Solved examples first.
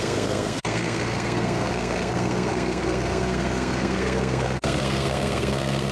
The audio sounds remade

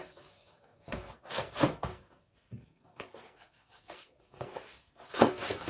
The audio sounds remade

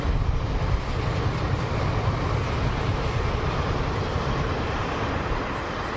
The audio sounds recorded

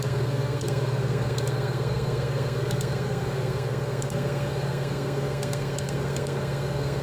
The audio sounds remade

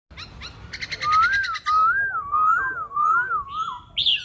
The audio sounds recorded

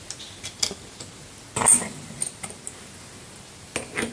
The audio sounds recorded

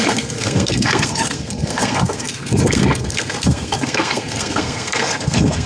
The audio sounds remade